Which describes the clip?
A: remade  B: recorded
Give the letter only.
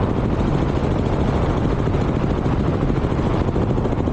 B